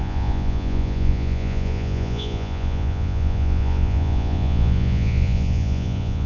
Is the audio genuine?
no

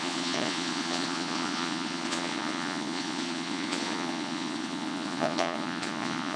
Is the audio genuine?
no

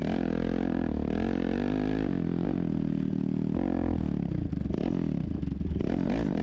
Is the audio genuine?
yes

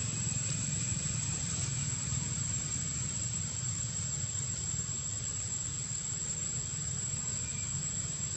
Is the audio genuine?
no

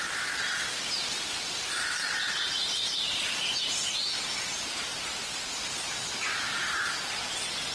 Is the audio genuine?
yes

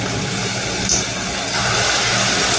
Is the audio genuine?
yes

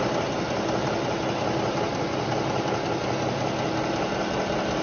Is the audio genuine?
yes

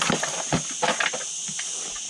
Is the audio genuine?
yes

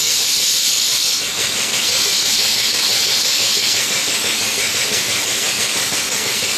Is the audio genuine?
no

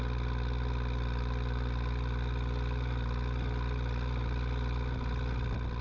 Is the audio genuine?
yes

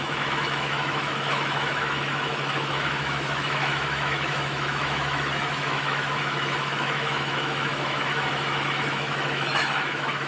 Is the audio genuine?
no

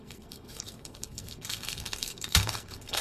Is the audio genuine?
no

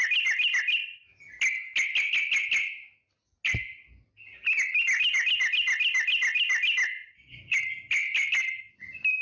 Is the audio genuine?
yes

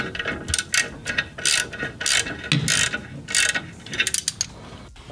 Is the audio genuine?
yes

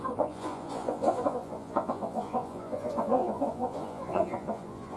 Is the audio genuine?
no